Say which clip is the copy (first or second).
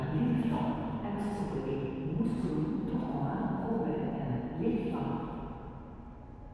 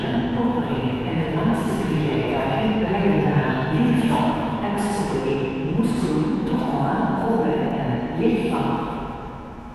second